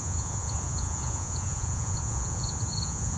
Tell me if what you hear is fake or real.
fake